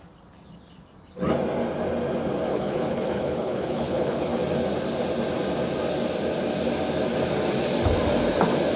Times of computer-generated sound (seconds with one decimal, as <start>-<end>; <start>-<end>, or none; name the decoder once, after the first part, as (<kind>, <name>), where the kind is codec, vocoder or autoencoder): 2.5-4.4 (codec, HILCodec)